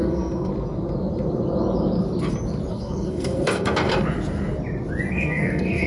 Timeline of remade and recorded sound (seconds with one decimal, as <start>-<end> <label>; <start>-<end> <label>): 0.0-0.5 remade; 0.5-2.7 recorded; 2.7-3.9 remade; 3.9-5.1 recorded; 5.1-5.9 remade